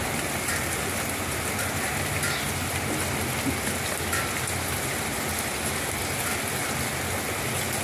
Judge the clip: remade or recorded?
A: recorded